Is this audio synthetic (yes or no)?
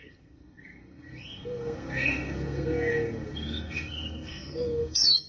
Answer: yes